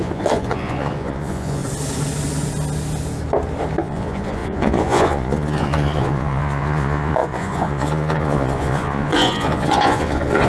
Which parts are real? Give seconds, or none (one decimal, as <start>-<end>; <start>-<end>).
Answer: 1.6-3.8